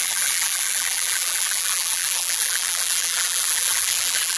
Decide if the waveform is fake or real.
fake